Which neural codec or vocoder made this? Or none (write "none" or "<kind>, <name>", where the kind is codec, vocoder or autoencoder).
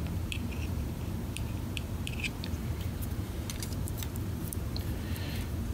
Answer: vocoder, BigVGAN v2